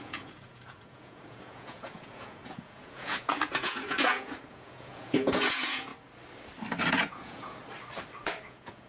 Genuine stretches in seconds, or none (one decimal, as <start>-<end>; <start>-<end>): 5.9-6.9; 7.6-8.2

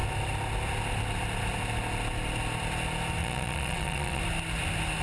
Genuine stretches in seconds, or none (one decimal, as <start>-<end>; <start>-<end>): 0.0-3.2; 4.2-5.0

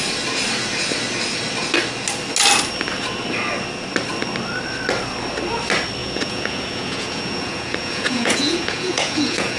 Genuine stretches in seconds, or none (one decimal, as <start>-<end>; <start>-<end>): 0.0-6.0

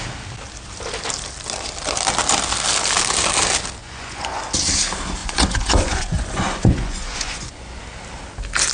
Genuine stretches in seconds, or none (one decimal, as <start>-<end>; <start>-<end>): 0.0-3.8; 4.4-5.2; 7.8-8.7

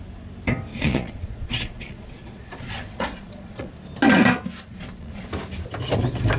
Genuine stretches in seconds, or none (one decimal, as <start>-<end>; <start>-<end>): 0.0-0.7; 3.7-4.7; 5.3-6.4

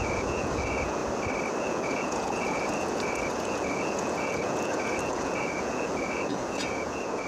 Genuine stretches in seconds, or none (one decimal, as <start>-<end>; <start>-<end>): 1.0-1.6